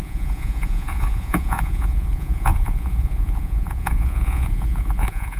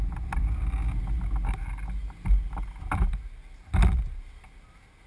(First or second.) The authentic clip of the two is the second